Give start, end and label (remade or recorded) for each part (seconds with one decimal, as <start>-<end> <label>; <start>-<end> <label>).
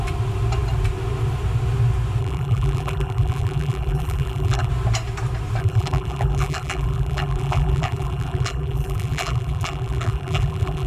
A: 0.0-2.2 recorded; 2.2-4.7 remade; 4.7-5.6 recorded; 5.6-10.9 remade